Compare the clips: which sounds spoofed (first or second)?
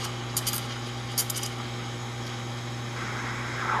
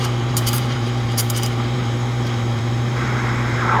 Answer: second